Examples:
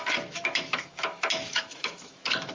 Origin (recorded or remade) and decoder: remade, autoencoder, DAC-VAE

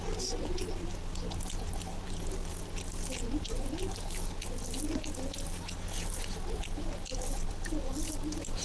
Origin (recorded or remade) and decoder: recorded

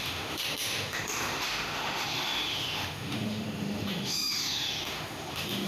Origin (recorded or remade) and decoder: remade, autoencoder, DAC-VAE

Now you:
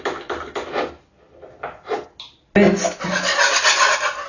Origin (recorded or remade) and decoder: recorded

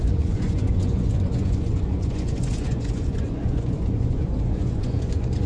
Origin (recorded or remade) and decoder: remade, vocoder, Vocos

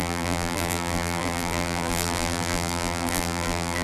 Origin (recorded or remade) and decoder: remade, vocoder, BigVGAN v2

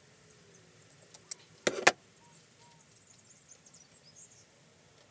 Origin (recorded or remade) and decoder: recorded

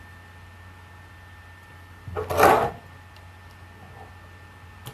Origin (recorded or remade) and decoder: recorded